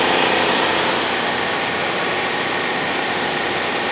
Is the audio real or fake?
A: real